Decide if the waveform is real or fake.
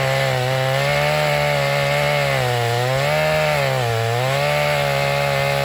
real